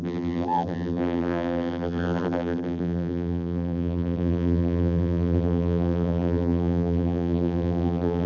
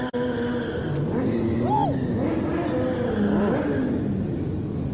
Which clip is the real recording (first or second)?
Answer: second